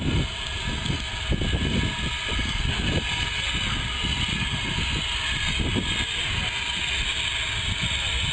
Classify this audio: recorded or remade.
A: recorded